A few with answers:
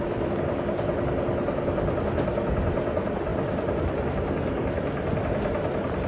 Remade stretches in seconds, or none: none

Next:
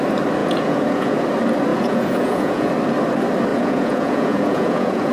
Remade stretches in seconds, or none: 0.4-1.2 (vocoder, Vocos); 1.7-2.7; 3.5-5.1

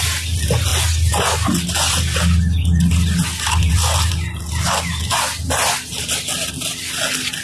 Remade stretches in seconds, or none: none

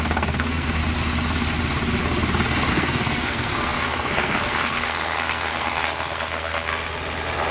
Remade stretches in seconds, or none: 0.0-0.8 (codec, SNAC); 2.7-6.7

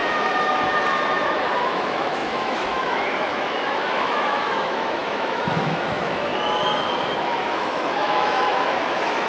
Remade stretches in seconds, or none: 1.6-6.3 (autoencoder, DAC-VAE); 7.2-9.3

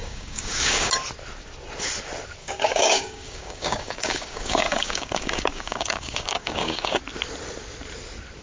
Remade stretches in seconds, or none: 0.0-0.9 (codec, DAC); 2.4-7.0